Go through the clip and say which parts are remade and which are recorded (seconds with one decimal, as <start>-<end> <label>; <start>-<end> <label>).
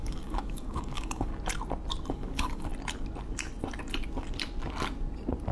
0.0-1.3 remade; 1.3-2.1 recorded; 2.1-2.7 remade; 2.7-5.5 recorded